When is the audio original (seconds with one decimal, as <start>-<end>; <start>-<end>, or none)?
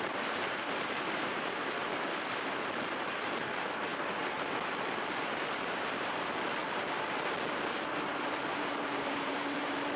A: 1.8-3.0; 6.6-8.1